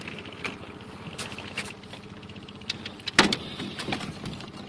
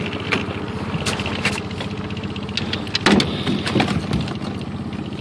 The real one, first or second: second